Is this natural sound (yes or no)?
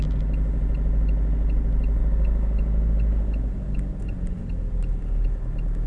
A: yes